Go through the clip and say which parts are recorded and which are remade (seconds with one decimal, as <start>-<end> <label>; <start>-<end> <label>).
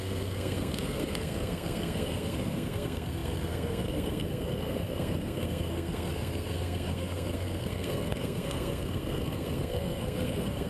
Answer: 0.0-10.7 remade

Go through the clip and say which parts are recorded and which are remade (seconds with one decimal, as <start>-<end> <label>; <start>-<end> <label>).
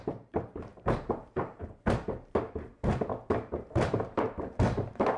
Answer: 0.0-2.7 remade; 2.7-3.7 recorded; 3.7-5.2 remade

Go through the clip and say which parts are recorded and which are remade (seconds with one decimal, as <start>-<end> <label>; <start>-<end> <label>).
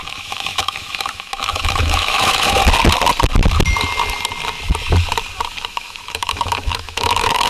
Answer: 0.0-2.6 remade; 2.6-5.7 recorded; 5.7-7.5 remade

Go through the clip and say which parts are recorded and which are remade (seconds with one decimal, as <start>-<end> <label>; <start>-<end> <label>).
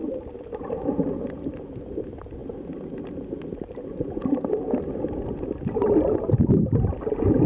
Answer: 0.0-7.5 recorded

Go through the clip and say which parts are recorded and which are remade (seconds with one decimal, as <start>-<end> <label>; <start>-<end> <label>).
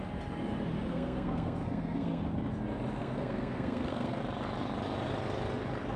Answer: 0.0-0.9 recorded; 0.9-2.2 remade; 2.2-3.0 recorded; 3.0-4.2 remade; 4.2-6.0 recorded